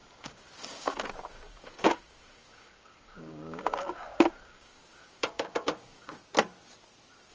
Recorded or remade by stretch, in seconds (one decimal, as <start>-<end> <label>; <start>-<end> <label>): 0.0-6.2 remade; 6.2-7.3 recorded